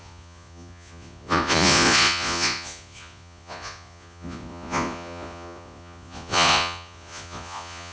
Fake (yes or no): yes